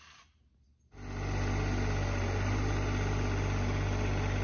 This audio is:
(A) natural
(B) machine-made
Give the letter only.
A